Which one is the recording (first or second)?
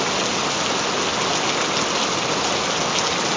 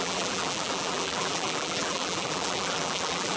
first